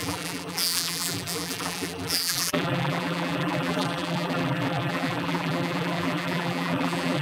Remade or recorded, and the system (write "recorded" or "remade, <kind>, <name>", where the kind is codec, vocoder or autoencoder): remade, vocoder, BigVGAN v2